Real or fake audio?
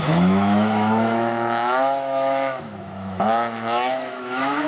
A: fake